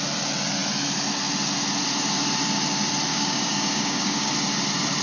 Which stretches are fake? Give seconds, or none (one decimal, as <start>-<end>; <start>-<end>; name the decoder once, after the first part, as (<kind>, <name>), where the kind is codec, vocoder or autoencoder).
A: 3.1-4.3 (codec, DAC)